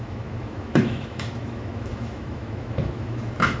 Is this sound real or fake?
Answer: fake